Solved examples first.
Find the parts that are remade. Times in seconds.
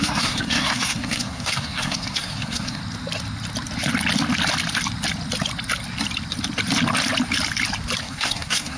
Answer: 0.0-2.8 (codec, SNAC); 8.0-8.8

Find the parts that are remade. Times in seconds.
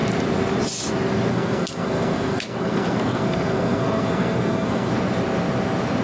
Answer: 1.3-4.9 (codec, SNAC)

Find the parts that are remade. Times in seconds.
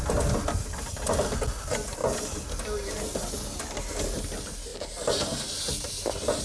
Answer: none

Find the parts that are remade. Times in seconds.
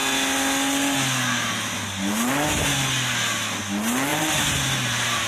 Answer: 4.1-5.3 (vocoder, BigVGAN v2)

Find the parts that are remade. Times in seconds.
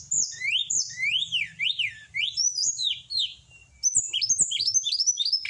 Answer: none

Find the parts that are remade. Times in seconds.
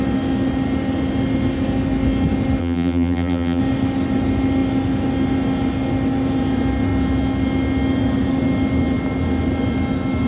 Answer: 2.6-3.6 (vocoder, BigVGAN v2)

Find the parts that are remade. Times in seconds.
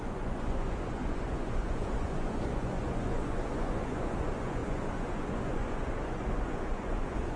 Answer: 0.0-7.4 (vocoder, Vocos)